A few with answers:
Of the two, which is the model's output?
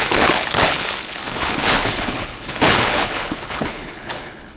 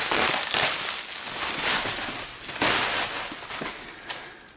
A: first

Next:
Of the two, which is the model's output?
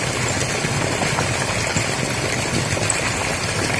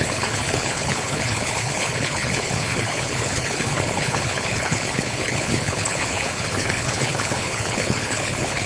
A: second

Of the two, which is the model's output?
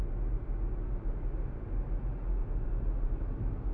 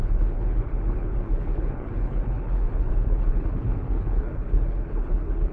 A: second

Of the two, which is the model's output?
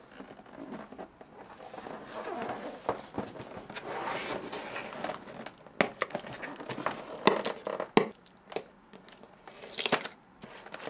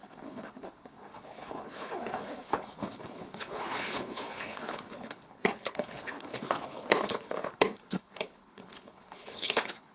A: second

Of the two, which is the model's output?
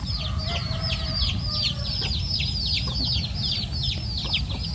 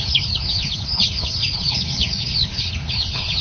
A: second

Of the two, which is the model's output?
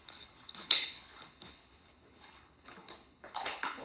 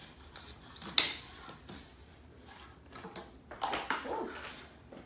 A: first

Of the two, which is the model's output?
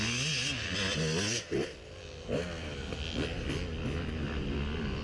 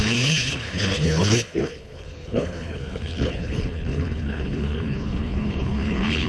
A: second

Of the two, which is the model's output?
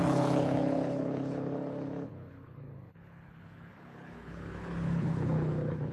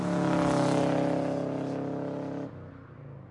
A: first